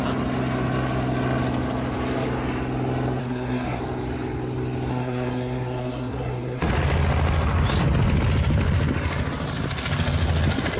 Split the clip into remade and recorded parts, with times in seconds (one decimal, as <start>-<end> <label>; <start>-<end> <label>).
0.0-3.2 recorded; 3.2-3.8 remade; 3.8-4.9 recorded; 4.9-6.7 remade; 6.7-10.8 recorded